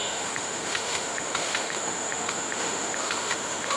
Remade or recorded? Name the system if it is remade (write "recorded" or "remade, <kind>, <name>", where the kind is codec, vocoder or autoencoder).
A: remade, autoencoder, DAC-VAE